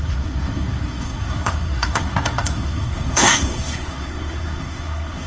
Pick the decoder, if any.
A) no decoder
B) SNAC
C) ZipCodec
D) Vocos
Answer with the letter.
B